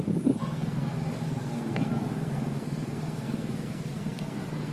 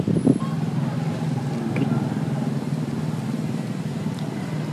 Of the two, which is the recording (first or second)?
second